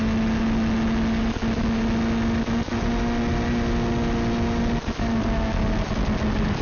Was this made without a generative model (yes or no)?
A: yes